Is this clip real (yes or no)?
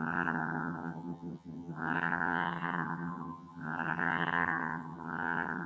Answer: no